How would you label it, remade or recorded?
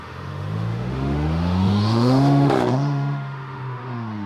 remade